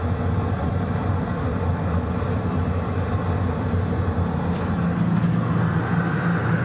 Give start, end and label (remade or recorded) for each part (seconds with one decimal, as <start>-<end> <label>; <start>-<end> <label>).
0.0-4.0 remade; 4.0-6.6 recorded